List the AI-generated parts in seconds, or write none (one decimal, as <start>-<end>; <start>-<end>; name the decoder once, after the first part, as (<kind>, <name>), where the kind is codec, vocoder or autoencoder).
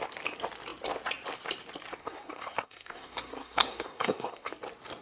2.0-4.5 (codec, SNAC)